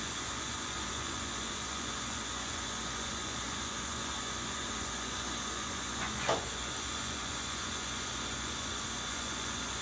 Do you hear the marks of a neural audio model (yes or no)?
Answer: yes